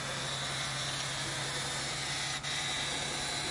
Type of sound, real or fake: real